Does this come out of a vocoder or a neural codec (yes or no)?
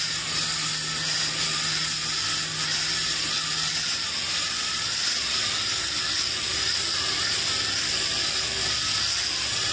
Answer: no